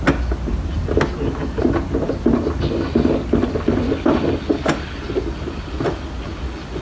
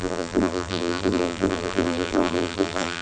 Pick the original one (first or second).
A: first